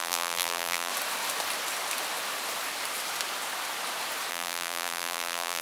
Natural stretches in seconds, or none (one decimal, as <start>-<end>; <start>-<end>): 0.9-4.3